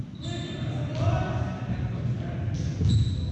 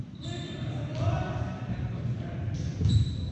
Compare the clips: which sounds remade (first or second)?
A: second